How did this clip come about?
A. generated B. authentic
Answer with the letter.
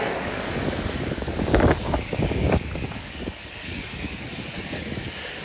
A